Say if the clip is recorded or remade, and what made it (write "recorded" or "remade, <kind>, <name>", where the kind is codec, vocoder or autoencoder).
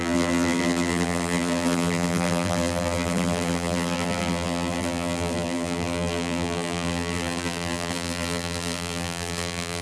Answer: remade, vocoder, BigVGAN v2